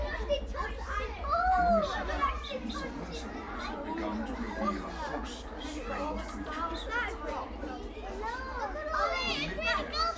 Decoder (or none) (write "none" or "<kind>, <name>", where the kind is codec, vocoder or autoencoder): none